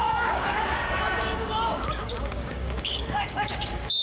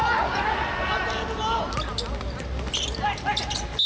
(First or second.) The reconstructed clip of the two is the first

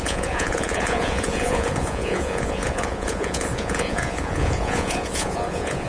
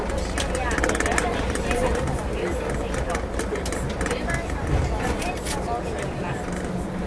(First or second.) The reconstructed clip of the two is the first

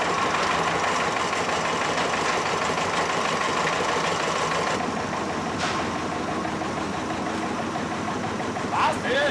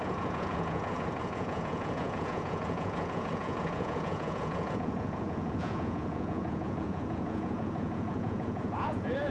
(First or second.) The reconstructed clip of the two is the second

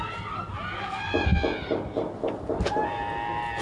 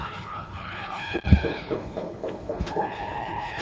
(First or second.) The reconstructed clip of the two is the second